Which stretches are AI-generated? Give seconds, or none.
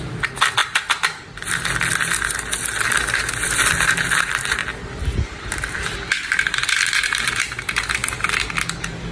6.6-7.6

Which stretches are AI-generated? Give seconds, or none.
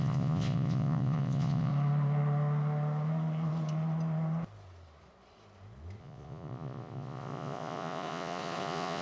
0.0-1.7; 6.0-9.0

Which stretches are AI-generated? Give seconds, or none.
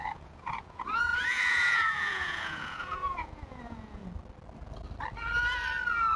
0.0-4.0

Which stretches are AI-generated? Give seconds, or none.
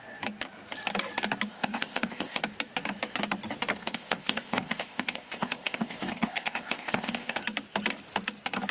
1.5-2.4; 3.8-7.4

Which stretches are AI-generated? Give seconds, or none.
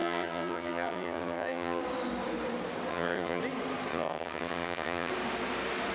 0.0-1.8; 2.9-3.4; 3.9-5.1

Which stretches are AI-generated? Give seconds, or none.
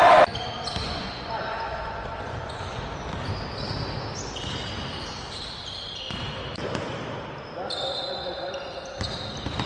0.8-2.8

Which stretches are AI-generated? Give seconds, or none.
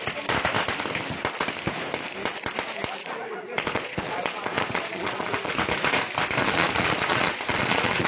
3.0-5.5; 6.4-8.1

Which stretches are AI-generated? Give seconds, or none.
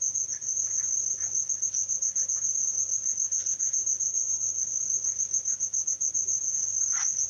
4.1-4.6